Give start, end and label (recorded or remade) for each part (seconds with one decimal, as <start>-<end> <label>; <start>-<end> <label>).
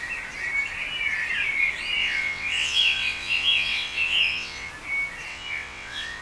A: 0.0-2.0 recorded; 2.0-4.7 remade; 4.7-5.3 recorded; 5.3-6.2 remade